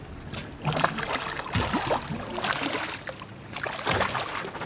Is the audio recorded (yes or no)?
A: yes